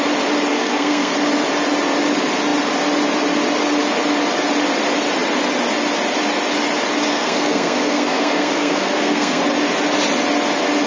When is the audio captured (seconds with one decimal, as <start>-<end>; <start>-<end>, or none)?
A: 0.0-0.5; 1.1-7.1; 9.4-10.9